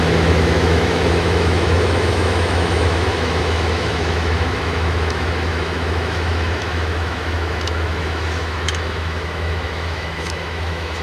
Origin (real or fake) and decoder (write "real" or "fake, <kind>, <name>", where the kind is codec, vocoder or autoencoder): fake, autoencoder, DAC-VAE